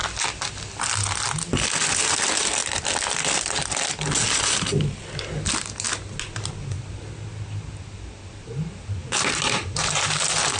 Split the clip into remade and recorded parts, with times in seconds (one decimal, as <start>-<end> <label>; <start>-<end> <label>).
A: 0.0-9.0 recorded; 9.0-10.6 remade

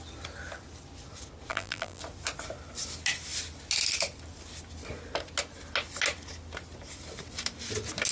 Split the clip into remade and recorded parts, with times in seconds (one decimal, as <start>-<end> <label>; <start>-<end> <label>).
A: 0.0-1.5 recorded; 1.5-2.0 remade; 2.0-8.1 recorded